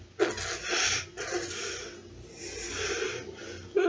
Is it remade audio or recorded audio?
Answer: recorded